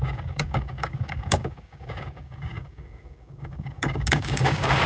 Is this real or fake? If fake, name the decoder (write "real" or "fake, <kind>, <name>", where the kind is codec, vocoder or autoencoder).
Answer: fake, codec, DAC